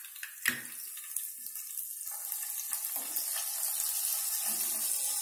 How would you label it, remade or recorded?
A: recorded